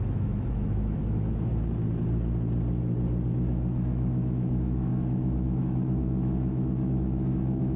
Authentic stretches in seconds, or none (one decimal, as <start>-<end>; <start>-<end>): 1.5-3.3